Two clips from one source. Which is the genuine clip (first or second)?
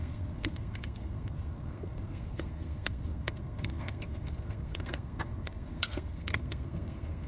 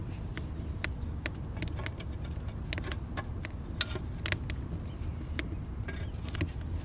second